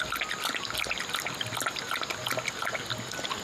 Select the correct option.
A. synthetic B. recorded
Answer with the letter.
B